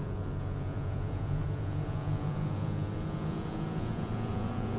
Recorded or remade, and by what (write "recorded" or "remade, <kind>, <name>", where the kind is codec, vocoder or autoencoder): remade, vocoder, Vocos